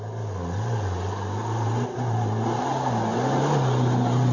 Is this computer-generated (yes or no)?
no